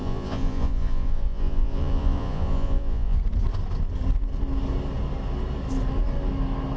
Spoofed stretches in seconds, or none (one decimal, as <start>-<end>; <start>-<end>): 0.0-3.2

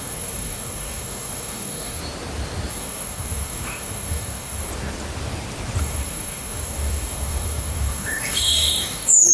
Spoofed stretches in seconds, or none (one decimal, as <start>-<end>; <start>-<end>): 0.0-2.0; 2.7-4.7; 5.8-9.3

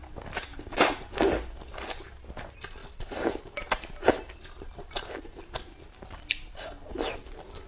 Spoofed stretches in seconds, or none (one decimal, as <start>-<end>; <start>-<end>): none

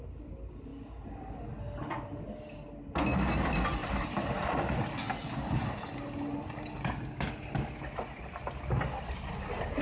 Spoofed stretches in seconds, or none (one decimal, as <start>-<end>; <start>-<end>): 3.8-4.9

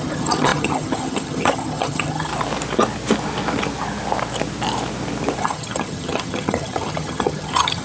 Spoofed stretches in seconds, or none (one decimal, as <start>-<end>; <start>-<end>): 0.0-2.3; 5.4-7.8